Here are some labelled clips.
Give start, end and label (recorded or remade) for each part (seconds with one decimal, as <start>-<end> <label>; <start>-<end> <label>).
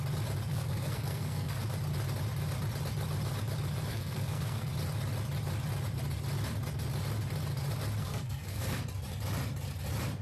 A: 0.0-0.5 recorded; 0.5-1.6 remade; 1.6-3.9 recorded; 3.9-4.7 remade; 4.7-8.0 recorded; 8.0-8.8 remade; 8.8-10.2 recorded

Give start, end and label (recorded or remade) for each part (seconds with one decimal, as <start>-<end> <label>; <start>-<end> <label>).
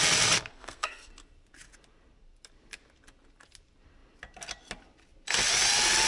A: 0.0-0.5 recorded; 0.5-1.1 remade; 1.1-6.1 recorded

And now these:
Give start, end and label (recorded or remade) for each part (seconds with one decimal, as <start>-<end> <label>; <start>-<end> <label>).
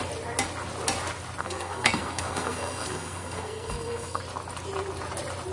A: 0.0-1.4 recorded; 1.4-4.2 remade; 4.2-5.5 recorded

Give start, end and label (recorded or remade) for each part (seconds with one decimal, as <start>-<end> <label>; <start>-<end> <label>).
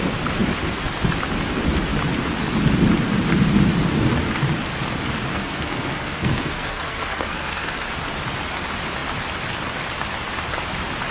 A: 0.0-5.3 recorded; 5.3-7.9 remade; 7.9-11.1 recorded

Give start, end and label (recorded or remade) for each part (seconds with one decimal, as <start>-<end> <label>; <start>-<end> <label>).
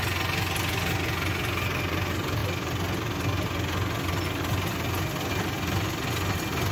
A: 0.0-6.7 recorded